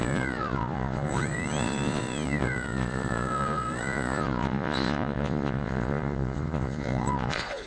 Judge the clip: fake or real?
fake